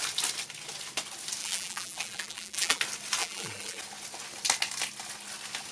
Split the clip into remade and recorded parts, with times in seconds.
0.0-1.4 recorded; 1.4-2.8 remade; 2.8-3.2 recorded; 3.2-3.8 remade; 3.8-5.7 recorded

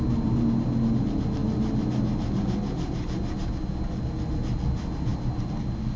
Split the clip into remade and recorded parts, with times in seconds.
0.0-6.0 recorded

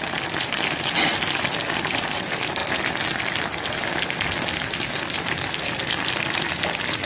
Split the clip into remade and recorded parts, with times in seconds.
0.0-7.0 recorded

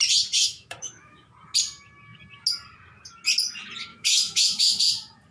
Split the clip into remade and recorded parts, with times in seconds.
0.0-0.4 recorded; 0.4-1.3 remade; 1.3-3.9 recorded; 3.9-4.8 remade; 4.8-5.3 recorded

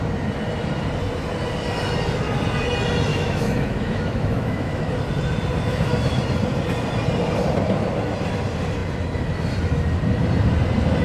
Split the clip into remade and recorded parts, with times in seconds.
0.0-3.1 recorded; 3.1-4.9 remade; 4.9-5.7 recorded; 5.7-6.2 remade; 6.2-11.0 recorded

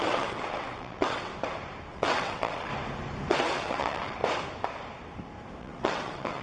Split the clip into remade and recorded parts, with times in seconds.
0.0-1.3 remade; 1.3-1.9 recorded; 1.9-2.7 remade; 2.7-3.3 recorded; 3.3-4.2 remade; 4.2-5.6 recorded; 5.6-6.4 remade

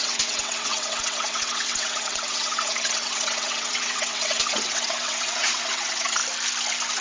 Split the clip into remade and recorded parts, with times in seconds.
0.0-6.2 remade; 6.2-7.0 recorded

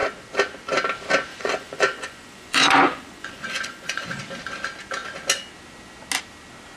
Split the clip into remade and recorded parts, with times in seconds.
0.0-1.3 recorded; 1.3-4.2 remade; 4.2-6.8 recorded